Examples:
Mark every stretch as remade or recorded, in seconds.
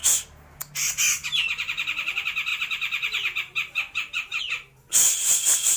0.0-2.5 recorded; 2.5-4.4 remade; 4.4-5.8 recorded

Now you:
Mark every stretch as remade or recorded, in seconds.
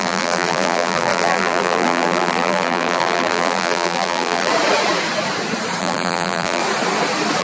0.0-4.5 remade; 4.5-5.8 recorded; 5.8-6.6 remade; 6.6-7.4 recorded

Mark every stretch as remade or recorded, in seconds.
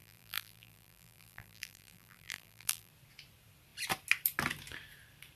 0.0-2.9 remade; 2.9-5.4 recorded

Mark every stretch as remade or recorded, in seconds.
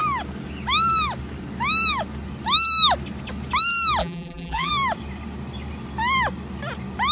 0.0-4.0 recorded; 4.0-4.7 remade; 4.7-7.1 recorded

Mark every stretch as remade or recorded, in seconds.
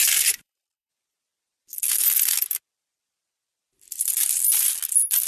0.0-0.9 remade; 0.9-5.3 recorded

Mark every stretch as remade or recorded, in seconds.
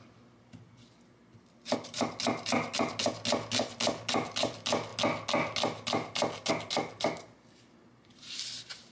0.0-8.1 recorded; 8.1-8.9 remade